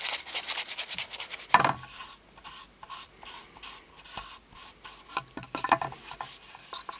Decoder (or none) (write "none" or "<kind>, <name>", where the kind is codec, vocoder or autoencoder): vocoder, BigVGAN v2